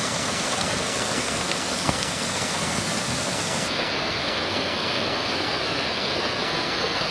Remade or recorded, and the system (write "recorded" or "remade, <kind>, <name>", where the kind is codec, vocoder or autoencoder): remade, codec, SNAC